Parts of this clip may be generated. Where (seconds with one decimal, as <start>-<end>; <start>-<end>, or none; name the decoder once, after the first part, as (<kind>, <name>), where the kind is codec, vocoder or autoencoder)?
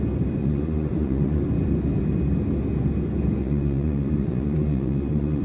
0.4-1.4 (vocoder, Vocos); 3.4-5.4